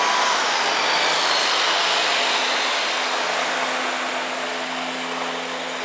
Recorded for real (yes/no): yes